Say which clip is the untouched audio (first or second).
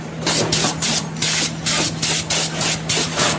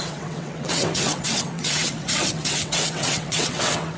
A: first